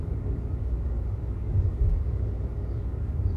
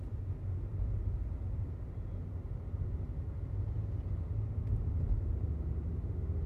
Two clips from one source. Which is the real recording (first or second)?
second